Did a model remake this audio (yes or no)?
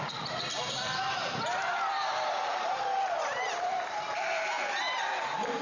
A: yes